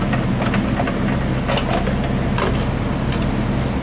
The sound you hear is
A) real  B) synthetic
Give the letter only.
A